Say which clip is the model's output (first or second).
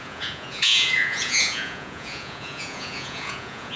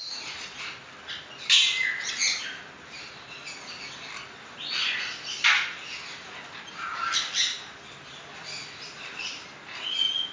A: first